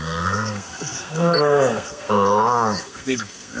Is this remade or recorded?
remade